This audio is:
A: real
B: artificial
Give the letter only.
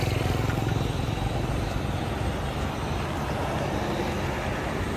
A